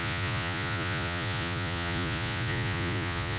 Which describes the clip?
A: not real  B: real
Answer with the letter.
A